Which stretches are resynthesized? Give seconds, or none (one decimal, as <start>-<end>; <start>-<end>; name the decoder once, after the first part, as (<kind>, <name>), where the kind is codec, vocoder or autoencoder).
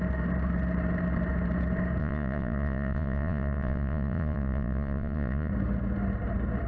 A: 2.0-5.5 (vocoder, Vocos)